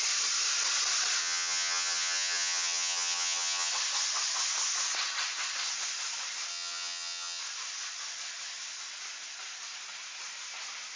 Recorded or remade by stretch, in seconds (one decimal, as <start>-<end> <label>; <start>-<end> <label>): 0.0-1.2 recorded; 1.2-3.7 remade; 3.7-6.5 recorded; 6.5-7.4 remade; 7.4-11.0 recorded